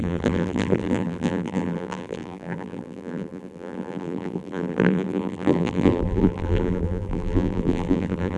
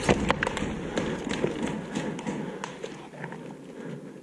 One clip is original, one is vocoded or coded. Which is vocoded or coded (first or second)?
first